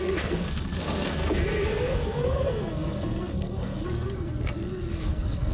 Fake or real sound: fake